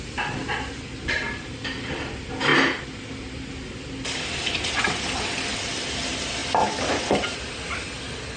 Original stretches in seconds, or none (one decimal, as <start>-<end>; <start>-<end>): 0.0-8.4